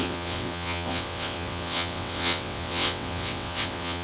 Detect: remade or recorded remade